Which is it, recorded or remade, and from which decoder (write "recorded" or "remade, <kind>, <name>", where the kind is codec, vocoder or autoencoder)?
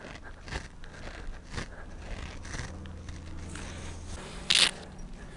recorded